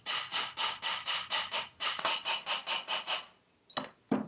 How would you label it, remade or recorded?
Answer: recorded